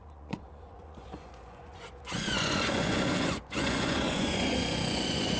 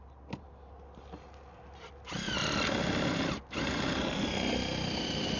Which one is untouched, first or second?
second